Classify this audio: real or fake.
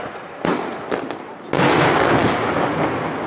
real